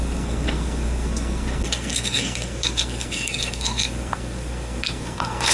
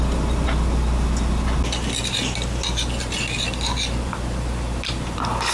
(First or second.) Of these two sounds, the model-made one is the first